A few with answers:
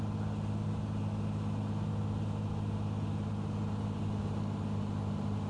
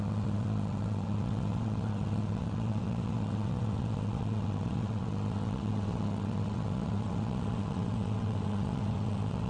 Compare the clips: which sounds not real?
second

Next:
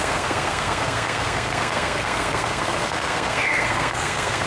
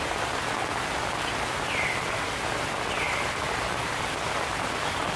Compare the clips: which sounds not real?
first